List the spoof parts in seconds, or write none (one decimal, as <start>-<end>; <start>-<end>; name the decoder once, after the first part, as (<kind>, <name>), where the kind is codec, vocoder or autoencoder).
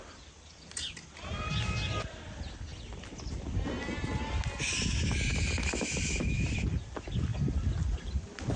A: none